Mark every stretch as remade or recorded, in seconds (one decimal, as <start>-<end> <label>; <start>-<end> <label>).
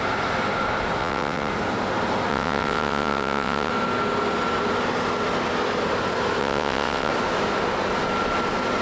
0.0-1.0 recorded; 1.0-1.5 remade; 1.5-2.3 recorded; 2.3-3.7 remade; 3.7-6.4 recorded; 6.4-7.1 remade; 7.1-8.8 recorded